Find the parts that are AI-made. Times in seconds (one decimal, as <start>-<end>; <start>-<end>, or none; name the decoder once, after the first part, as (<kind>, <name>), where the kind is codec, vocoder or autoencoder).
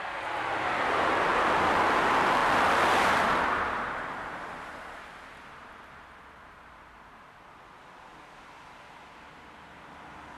none